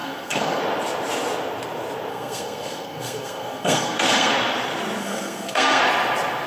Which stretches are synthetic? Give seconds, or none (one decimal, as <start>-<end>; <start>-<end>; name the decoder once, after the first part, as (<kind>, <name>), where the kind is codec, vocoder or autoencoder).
0.0-0.6 (codec, SNAC); 2.1-4.3; 5.0-5.8